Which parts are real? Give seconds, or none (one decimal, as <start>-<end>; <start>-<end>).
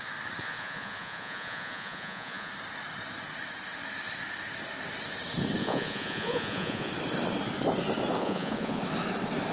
0.0-0.4; 2.5-5.6; 6.9-8.2; 8.8-9.5